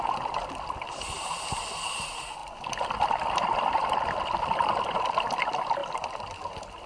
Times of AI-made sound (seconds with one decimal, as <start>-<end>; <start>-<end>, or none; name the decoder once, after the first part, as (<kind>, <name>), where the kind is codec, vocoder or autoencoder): none